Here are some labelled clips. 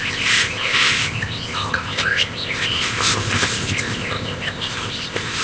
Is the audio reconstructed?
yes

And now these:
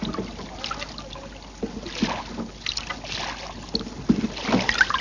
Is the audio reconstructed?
no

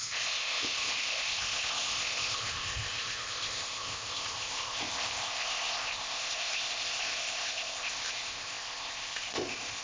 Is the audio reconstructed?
yes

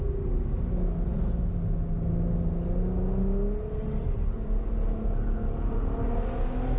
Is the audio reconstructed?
no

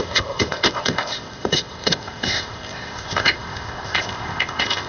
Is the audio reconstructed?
yes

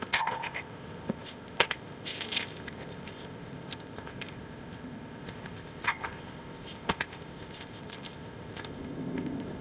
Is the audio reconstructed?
yes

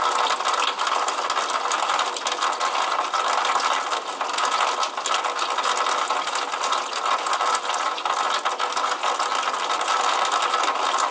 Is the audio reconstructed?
no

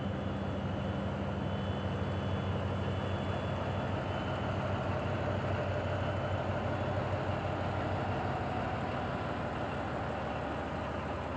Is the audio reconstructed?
no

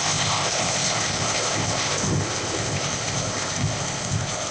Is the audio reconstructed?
yes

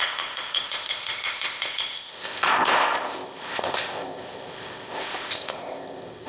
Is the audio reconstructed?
yes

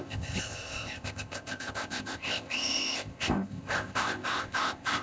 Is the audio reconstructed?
yes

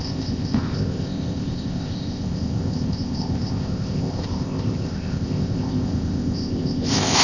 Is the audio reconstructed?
yes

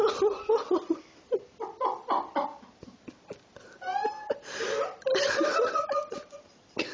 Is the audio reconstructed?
no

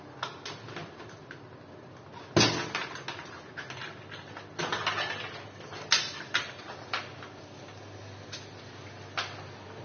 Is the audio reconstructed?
no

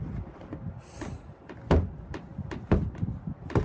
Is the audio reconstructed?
no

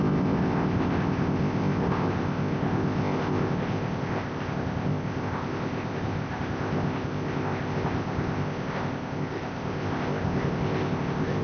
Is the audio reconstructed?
yes